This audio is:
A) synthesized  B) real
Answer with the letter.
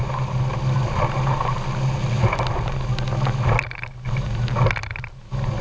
B